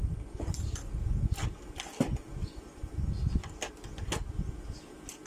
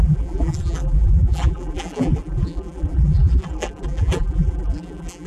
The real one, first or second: first